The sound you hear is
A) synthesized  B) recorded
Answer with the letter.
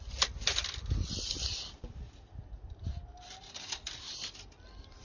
B